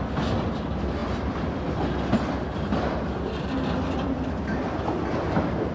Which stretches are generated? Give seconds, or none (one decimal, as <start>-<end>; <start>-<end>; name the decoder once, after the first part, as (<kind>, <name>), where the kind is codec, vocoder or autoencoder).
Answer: none